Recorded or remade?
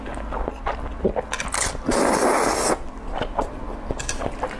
recorded